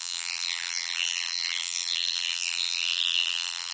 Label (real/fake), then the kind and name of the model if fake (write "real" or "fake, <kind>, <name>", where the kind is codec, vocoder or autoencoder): fake, vocoder, BigVGAN v2